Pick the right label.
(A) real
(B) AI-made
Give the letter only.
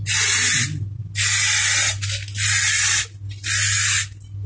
A